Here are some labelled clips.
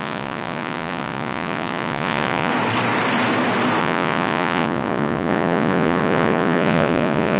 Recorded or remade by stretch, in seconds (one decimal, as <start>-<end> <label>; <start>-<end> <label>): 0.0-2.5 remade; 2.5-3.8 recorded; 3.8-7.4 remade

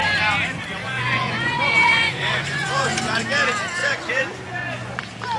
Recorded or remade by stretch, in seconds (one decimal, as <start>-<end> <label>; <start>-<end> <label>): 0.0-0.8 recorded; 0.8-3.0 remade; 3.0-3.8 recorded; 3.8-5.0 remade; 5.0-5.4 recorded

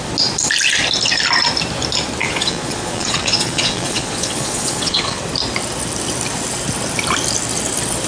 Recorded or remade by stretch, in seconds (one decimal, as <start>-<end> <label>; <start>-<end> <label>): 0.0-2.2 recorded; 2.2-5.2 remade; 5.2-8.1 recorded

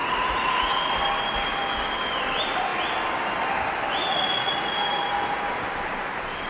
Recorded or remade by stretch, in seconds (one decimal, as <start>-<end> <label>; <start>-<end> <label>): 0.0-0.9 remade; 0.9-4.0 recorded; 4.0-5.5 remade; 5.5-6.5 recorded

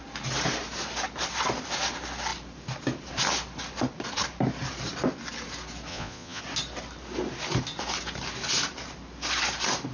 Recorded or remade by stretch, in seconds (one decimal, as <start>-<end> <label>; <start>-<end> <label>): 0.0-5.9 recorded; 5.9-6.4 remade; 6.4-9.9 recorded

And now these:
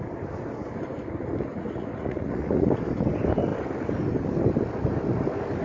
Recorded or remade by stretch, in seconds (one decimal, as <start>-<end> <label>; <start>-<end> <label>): 0.0-1.5 recorded; 1.5-2.7 remade; 2.7-5.6 recorded

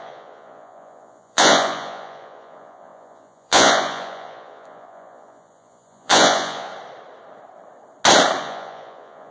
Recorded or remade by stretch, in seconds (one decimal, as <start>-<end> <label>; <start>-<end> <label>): 0.0-6.7 remade; 6.7-8.4 recorded; 8.4-9.3 remade